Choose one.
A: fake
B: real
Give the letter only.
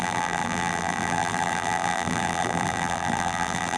A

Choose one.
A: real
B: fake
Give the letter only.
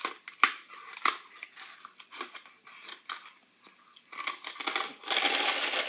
A